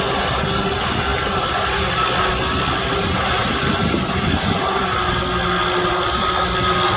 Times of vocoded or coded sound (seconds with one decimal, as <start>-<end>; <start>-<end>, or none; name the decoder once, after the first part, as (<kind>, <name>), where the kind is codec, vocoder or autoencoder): none